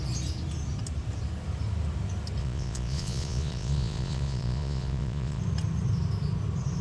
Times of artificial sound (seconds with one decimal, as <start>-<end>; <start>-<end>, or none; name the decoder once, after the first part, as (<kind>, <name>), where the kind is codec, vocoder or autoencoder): 2.4-5.4 (vocoder, Vocos)